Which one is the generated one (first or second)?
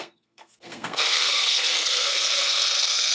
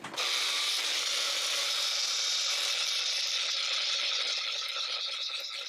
first